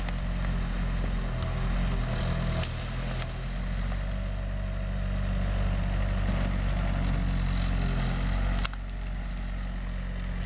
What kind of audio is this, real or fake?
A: real